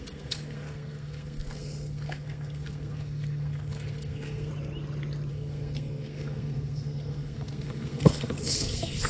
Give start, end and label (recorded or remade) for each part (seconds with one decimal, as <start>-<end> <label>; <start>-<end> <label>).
0.0-4.5 remade; 4.5-5.3 recorded; 5.3-9.1 remade